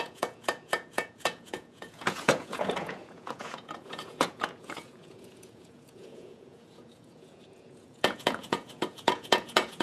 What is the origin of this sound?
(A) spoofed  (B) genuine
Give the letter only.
A